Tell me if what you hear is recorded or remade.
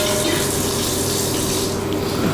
recorded